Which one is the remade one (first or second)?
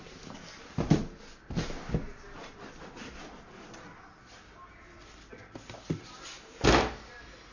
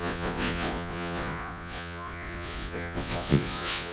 second